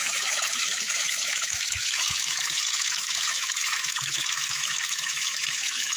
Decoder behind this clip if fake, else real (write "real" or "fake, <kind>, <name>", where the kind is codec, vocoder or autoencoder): fake, autoencoder, DAC-VAE